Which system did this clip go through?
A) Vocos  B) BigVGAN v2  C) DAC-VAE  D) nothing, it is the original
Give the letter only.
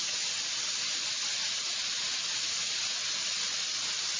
D